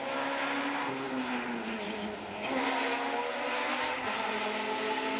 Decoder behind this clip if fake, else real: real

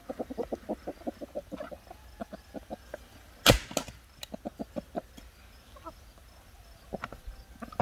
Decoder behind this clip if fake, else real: real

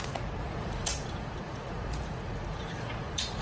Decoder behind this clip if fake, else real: fake, vocoder, Vocos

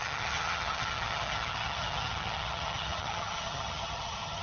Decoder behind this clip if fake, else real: fake, vocoder, HiFi-GAN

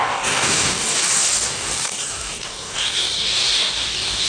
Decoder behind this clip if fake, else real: fake, codec, DAC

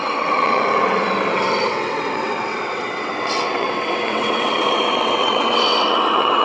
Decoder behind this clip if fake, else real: fake, vocoder, WaveNeXt